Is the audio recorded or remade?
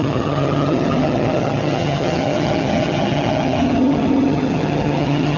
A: remade